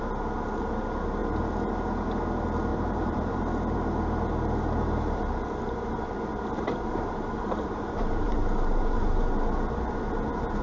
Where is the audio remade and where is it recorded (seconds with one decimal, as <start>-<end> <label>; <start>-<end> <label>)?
0.0-2.7 recorded; 2.7-3.4 remade; 3.4-6.9 recorded; 6.9-9.2 remade; 9.2-10.6 recorded